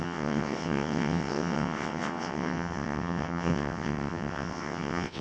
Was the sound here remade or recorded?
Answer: remade